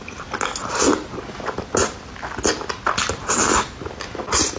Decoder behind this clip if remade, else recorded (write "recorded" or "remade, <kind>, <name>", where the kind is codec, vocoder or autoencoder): recorded